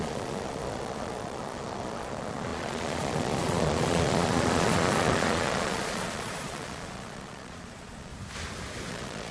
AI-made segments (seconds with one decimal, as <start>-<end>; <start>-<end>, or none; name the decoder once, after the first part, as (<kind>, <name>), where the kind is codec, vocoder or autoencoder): 0.0-8.1 (vocoder, Vocos); 8.9-9.3